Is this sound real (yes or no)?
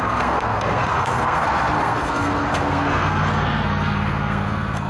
no